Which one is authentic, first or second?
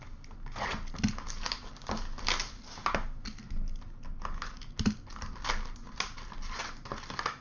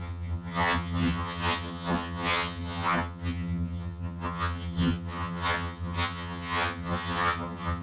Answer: first